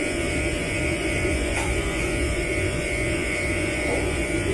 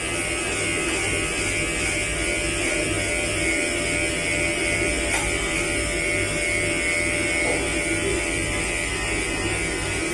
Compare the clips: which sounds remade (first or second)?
first